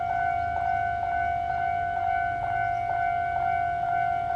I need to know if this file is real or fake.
real